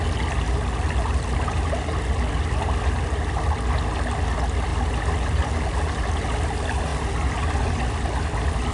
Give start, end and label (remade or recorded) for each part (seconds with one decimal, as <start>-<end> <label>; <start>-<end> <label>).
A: 0.0-8.7 recorded